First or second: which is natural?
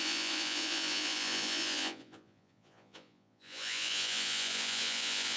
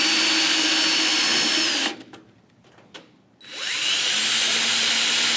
second